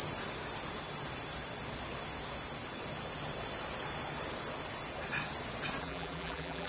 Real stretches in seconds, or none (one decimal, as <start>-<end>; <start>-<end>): 0.0-5.8